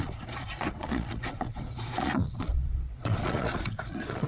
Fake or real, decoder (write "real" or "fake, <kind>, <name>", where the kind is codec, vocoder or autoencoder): fake, vocoder, Vocos